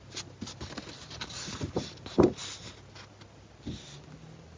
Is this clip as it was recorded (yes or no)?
yes